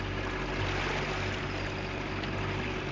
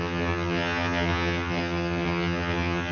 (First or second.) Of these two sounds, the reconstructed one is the second